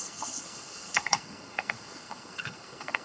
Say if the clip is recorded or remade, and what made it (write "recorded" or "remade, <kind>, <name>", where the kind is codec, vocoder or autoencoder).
remade, codec, SNAC